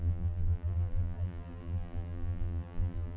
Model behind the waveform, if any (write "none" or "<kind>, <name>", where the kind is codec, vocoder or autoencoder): vocoder, BigVGAN v2